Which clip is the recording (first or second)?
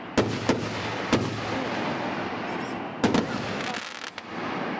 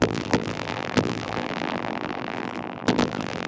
first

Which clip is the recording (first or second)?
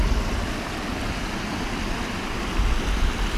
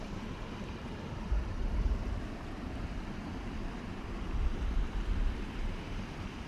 first